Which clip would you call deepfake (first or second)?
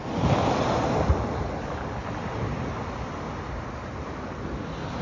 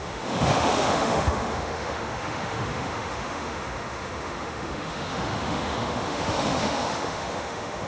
second